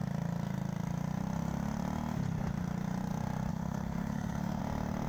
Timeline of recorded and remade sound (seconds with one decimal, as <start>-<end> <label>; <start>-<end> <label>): 0.0-3.5 recorded; 3.5-4.6 remade; 4.6-5.1 recorded